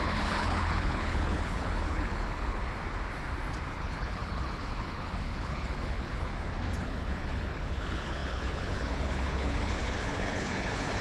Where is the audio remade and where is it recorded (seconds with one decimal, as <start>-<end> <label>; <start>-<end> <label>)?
0.0-2.6 remade; 2.6-3.7 recorded; 3.7-6.3 remade; 6.3-6.8 recorded; 6.8-11.0 remade